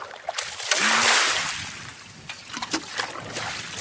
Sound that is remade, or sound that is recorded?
recorded